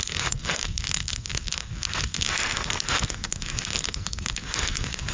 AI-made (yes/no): yes